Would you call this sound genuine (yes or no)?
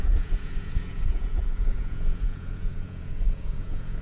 no